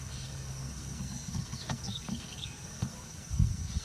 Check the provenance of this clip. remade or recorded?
remade